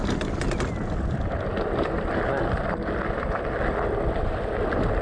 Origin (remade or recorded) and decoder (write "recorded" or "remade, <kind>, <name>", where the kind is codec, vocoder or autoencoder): recorded